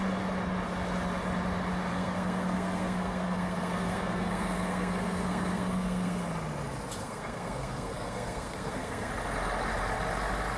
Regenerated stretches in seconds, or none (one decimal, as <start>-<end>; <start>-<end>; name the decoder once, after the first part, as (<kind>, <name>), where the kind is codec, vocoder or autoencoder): 1.9-6.2 (codec, SNAC); 7.0-9.1